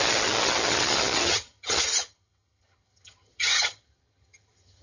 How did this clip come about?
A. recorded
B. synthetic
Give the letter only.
B